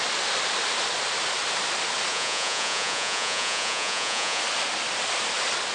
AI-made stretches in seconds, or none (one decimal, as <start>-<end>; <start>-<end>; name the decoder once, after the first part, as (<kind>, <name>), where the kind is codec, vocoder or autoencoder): 2.1-4.4 (vocoder, Vocos)